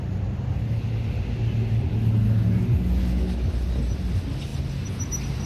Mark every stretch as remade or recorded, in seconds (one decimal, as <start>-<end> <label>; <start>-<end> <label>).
0.0-5.5 recorded